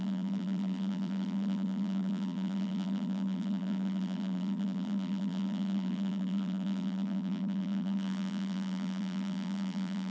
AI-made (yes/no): yes